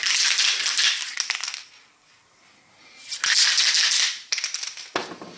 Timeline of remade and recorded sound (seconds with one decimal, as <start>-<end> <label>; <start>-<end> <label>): 0.0-5.4 recorded